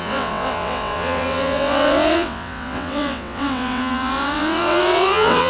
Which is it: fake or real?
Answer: fake